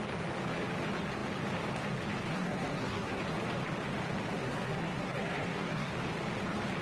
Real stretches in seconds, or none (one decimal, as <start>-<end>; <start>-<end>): 0.0-2.3; 3.2-4.3; 5.9-6.8